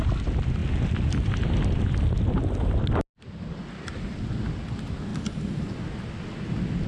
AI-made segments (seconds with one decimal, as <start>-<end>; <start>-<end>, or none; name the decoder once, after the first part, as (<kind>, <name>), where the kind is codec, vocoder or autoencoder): none